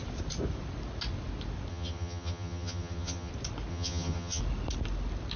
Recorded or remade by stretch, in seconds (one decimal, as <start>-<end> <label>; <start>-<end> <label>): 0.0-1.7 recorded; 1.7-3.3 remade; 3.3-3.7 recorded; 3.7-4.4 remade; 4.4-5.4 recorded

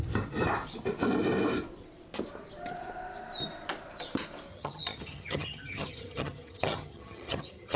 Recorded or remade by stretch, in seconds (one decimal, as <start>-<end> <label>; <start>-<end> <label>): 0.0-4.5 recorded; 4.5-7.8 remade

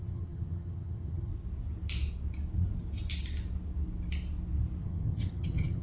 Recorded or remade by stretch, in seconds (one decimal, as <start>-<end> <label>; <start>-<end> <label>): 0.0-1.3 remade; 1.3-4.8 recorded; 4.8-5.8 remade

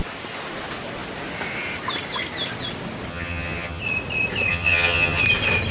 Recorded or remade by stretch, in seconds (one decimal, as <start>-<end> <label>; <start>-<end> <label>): 0.0-3.1 recorded; 3.1-3.8 remade; 3.8-4.5 recorded; 4.5-5.2 remade; 5.2-5.7 recorded

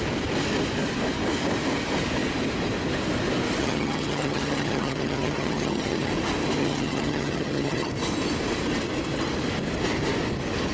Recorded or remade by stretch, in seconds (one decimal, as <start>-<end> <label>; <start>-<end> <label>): 0.0-3.6 recorded; 3.6-6.1 remade; 6.1-6.6 recorded; 6.6-7.9 remade; 7.9-10.7 recorded

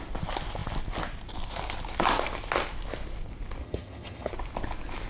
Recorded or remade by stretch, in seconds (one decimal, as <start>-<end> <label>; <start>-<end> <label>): 0.0-3.6 recorded; 3.6-4.3 remade; 4.3-5.1 recorded

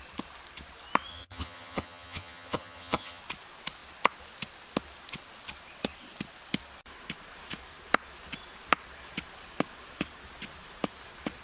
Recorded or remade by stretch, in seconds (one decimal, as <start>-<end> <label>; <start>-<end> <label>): 0.0-1.1 recorded; 1.1-3.2 remade; 3.2-11.4 recorded